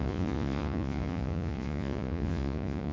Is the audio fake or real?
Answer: fake